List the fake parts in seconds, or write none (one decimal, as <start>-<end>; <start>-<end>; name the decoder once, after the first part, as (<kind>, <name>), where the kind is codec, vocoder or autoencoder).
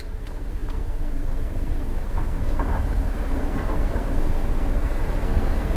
0.0-5.8 (codec, SNAC)